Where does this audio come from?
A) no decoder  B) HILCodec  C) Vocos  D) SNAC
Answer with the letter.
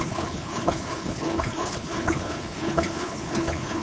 B